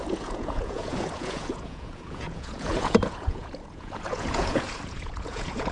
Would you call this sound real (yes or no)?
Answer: no